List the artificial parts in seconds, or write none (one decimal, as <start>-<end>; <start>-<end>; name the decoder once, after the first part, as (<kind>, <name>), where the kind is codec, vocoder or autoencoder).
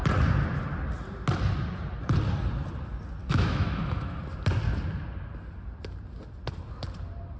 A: 3.2-4.2 (autoencoder, DAC-VAE)